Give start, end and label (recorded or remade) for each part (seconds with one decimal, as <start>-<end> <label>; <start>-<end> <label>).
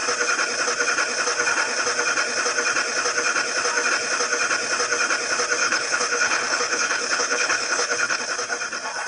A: 0.0-5.6 recorded; 5.6-8.2 remade; 8.2-9.1 recorded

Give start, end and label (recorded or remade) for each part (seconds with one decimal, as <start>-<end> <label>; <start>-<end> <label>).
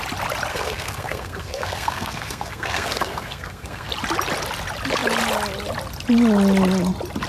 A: 0.0-0.5 recorded; 0.5-3.9 remade; 3.9-7.3 recorded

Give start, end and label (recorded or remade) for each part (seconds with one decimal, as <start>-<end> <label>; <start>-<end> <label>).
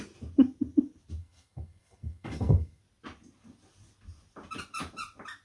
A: 0.0-1.2 recorded; 1.2-2.8 remade; 2.8-5.4 recorded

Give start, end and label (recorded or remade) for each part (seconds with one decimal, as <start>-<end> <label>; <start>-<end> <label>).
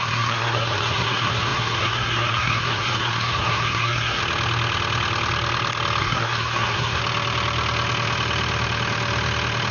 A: 0.0-4.2 remade; 4.2-6.0 recorded; 6.0-7.0 remade; 7.0-9.7 recorded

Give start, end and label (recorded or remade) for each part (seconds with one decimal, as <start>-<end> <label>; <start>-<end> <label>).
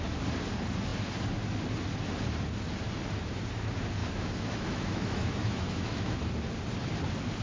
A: 0.0-4.0 recorded; 4.0-6.2 remade; 6.2-7.4 recorded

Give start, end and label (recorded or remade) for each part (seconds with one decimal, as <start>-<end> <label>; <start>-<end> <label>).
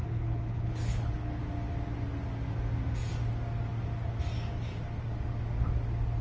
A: 0.0-1.4 remade; 1.4-6.2 recorded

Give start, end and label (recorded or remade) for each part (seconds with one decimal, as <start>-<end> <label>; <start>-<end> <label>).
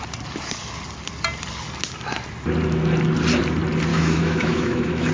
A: 0.0-3.9 recorded; 3.9-5.1 remade